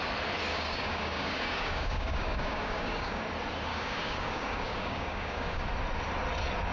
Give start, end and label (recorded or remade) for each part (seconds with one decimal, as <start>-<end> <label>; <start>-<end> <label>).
0.0-0.5 recorded; 0.5-3.2 remade; 3.2-3.7 recorded; 3.7-5.6 remade; 5.6-6.7 recorded